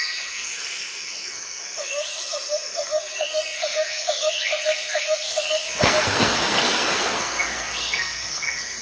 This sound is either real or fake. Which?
fake